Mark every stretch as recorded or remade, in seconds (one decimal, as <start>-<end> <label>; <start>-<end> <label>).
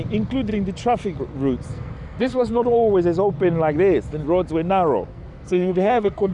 0.0-1.7 recorded; 1.7-2.6 remade; 2.6-5.1 recorded; 5.1-6.3 remade